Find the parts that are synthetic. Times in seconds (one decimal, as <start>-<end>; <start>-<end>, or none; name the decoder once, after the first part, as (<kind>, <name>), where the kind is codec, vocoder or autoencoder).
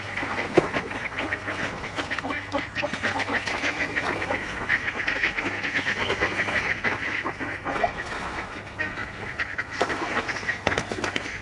0.0-11.4 (codec, SNAC)